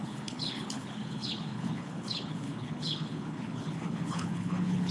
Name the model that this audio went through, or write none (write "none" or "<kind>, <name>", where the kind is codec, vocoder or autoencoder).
codec, HILCodec